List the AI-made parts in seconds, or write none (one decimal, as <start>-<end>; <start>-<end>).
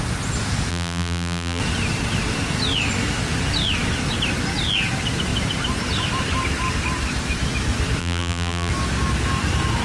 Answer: 0.7-1.6; 8.0-8.7